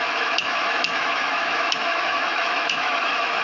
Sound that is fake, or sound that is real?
fake